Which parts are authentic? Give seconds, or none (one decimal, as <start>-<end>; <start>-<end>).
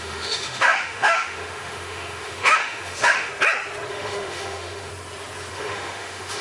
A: 3.3-3.9; 4.9-5.5